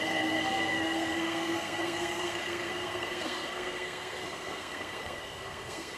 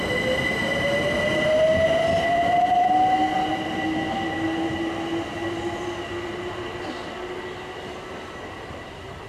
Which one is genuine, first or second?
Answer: second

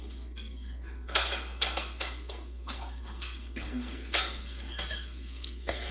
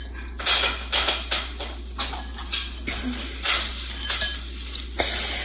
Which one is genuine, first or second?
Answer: second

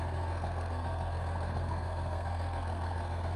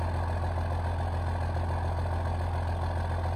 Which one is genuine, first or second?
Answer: second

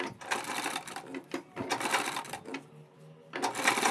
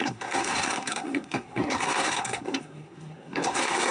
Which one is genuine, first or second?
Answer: first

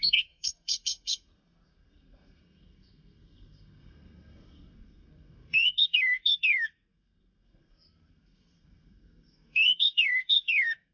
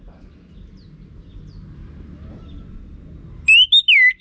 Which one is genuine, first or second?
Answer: second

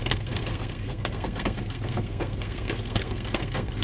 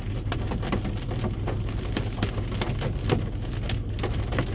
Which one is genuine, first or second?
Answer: second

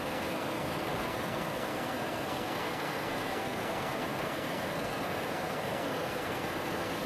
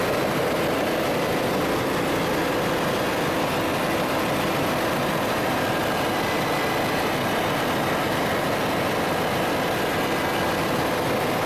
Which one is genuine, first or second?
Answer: second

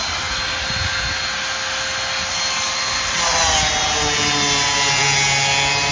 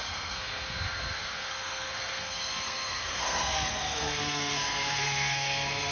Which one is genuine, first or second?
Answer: first